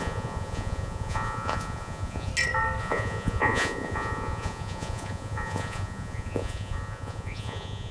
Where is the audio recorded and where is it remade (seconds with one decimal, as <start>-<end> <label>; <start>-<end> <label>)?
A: 0.0-2.3 remade; 2.3-2.8 recorded; 2.8-7.9 remade